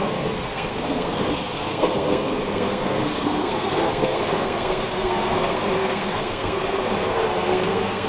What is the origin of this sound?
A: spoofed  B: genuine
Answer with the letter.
A